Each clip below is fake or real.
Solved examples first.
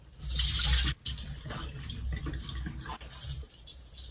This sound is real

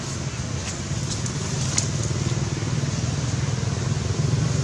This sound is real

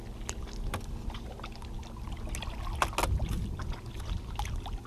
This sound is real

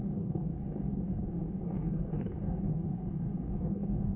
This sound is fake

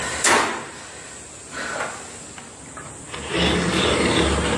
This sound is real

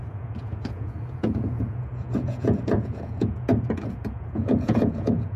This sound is fake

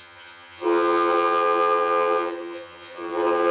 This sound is fake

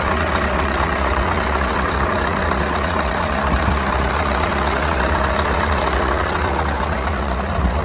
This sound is fake